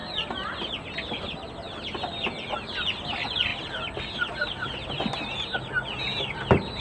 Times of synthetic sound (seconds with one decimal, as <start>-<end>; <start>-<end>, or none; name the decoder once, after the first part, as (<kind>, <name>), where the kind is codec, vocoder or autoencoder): none